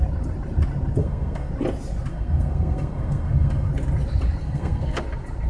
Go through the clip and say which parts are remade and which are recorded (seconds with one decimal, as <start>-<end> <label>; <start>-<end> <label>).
0.0-1.0 recorded; 1.0-1.5 remade; 1.5-2.1 recorded; 2.1-3.7 remade; 3.7-4.4 recorded; 4.4-5.0 remade; 5.0-5.5 recorded